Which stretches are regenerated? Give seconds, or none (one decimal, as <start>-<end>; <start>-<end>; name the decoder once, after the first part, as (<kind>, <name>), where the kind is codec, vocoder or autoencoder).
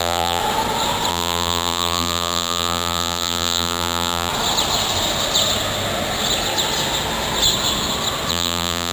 0.0-0.4 (vocoder, BigVGAN v2); 1.1-4.3; 8.3-8.9